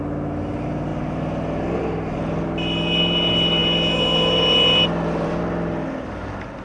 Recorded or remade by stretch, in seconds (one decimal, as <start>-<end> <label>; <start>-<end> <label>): 0.0-6.6 recorded